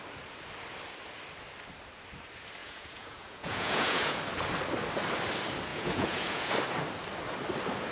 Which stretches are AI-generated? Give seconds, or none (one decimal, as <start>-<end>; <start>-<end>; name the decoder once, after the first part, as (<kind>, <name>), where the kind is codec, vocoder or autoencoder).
2.6-4.2 (vocoder, Vocos); 5.7-6.5